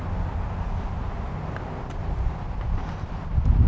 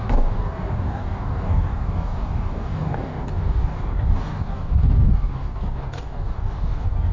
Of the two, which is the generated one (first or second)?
second